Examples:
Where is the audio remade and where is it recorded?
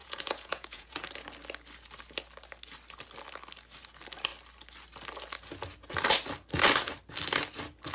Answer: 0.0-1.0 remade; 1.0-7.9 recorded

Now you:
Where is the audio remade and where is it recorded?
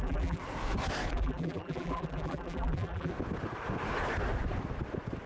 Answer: 0.0-0.4 remade; 0.4-1.1 recorded; 1.1-3.1 remade; 3.1-5.3 recorded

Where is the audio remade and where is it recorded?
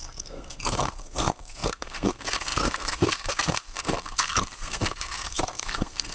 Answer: 0.0-6.1 remade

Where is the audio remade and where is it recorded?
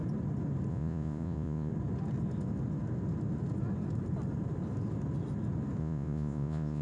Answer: 0.0-0.7 recorded; 0.7-1.7 remade; 1.7-5.8 recorded; 5.8-6.8 remade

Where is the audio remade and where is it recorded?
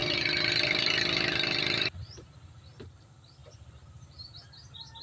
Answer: 0.0-5.0 recorded